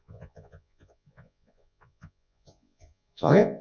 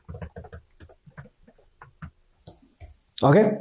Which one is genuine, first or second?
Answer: second